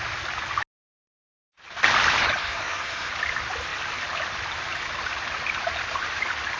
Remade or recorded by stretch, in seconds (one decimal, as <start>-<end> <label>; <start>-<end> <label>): 0.0-2.4 recorded; 2.4-3.1 remade; 3.1-6.6 recorded